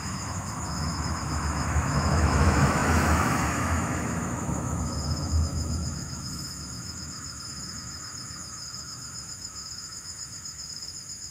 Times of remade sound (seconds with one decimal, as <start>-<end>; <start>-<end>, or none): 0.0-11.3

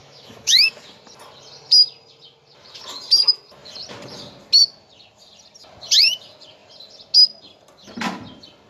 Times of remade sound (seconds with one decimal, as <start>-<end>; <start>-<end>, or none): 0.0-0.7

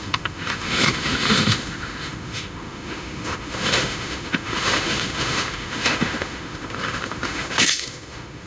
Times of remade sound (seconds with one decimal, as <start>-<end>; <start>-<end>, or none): 0.0-8.5

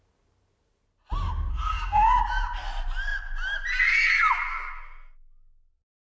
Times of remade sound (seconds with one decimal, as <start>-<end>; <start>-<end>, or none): 1.5-2.2

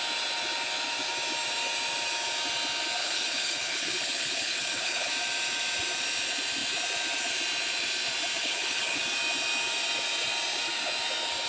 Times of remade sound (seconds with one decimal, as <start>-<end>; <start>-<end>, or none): 3.0-5.1; 8.4-9.0

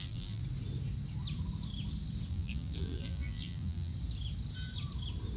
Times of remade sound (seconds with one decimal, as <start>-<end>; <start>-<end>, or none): 0.0-0.4; 2.3-3.9